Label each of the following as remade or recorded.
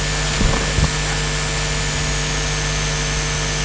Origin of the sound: recorded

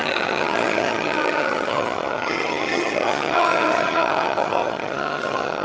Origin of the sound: remade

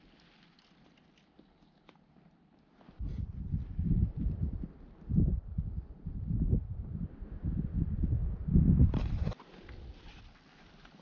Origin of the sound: recorded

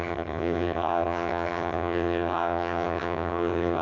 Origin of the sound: remade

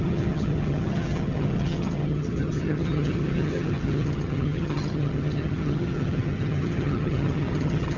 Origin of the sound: remade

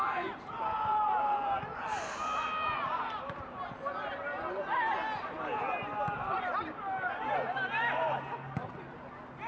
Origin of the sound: recorded